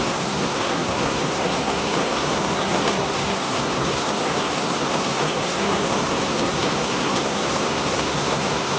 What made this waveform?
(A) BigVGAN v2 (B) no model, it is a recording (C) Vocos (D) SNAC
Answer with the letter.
D